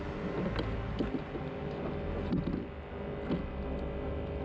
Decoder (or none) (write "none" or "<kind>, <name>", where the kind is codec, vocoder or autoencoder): none